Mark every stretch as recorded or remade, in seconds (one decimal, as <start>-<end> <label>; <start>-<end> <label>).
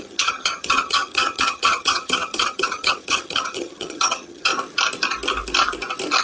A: 0.0-4.5 remade; 4.5-6.2 recorded